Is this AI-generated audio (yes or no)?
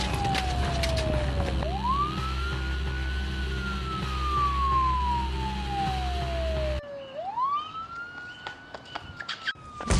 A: no